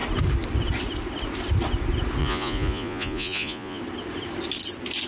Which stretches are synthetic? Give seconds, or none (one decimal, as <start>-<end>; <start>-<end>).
2.2-3.8